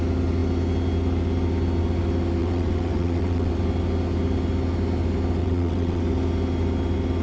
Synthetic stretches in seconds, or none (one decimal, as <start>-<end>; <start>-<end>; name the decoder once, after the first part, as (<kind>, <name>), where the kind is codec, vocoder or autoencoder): 2.4-3.5 (vocoder, WaveNeXt); 5.4-6.0